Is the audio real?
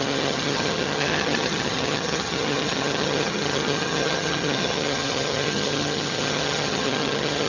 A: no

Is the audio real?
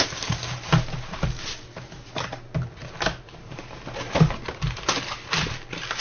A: yes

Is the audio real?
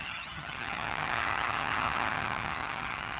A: no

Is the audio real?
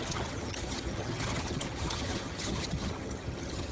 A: no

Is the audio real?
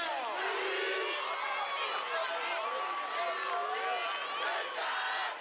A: yes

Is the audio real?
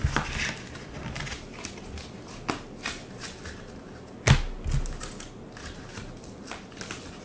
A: yes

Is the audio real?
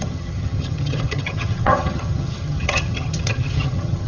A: no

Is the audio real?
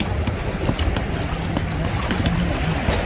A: yes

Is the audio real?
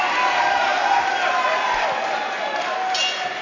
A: yes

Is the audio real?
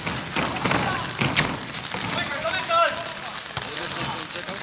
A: yes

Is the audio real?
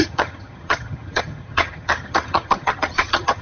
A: no